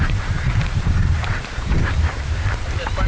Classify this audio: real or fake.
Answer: fake